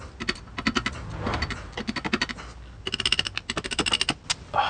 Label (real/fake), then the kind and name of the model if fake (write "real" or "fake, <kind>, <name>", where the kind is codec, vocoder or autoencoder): real